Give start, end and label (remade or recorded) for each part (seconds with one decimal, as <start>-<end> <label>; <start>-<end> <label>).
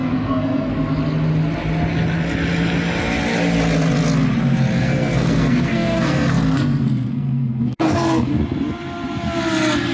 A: 0.0-0.7 remade; 0.7-4.8 recorded; 4.8-8.3 remade; 8.3-9.9 recorded